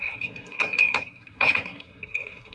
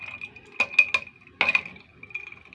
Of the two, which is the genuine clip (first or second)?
second